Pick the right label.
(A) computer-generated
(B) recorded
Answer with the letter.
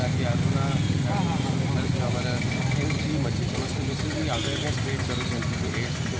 B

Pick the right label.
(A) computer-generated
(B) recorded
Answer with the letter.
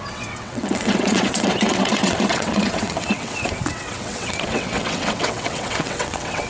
A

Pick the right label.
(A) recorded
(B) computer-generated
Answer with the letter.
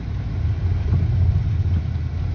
A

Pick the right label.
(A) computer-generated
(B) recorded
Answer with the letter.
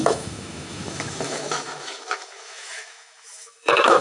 A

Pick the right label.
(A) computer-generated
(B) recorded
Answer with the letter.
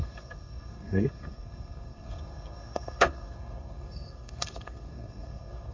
A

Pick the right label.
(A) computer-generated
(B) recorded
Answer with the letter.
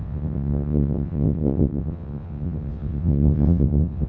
A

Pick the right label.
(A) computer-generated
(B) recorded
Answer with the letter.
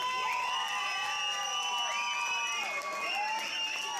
B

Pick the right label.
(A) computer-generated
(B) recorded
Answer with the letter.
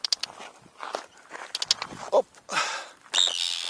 B